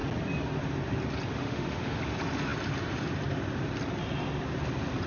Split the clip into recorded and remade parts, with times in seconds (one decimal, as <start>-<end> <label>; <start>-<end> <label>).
0.0-1.4 recorded; 1.4-2.0 remade; 2.0-5.1 recorded